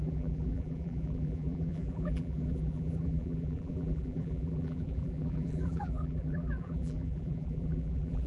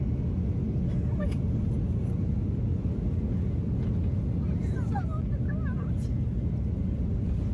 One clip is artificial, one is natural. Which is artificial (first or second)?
first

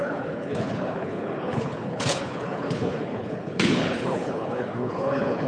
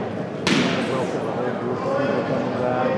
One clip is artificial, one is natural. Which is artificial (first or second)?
first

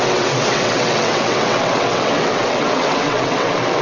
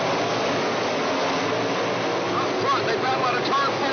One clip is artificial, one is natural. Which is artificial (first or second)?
first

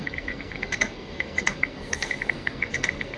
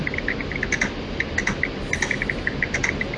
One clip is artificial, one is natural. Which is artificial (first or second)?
first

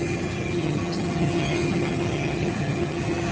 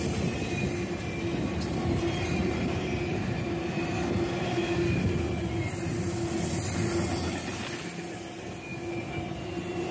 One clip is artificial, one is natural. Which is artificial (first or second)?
first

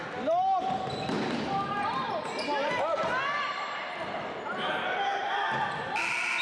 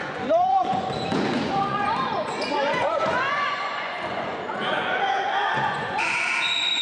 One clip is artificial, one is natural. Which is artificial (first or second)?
second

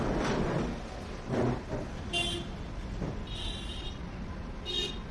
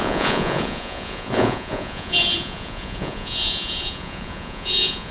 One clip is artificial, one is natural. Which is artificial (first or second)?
second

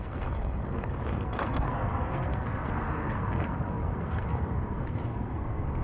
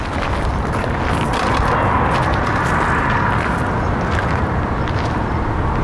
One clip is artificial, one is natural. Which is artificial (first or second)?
first